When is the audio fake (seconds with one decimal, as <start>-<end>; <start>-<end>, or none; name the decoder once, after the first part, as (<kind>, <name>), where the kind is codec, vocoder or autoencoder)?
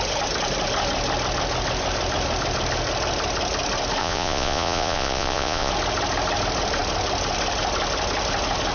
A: 4.0-5.7 (vocoder, Vocos)